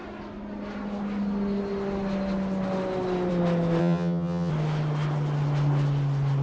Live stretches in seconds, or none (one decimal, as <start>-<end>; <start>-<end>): 0.0-3.8; 4.5-6.4